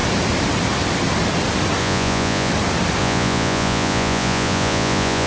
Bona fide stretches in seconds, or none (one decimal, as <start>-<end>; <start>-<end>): 0.0-1.8; 2.5-3.0